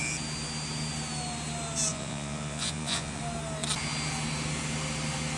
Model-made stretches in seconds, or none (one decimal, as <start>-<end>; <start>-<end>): 1.9-3.2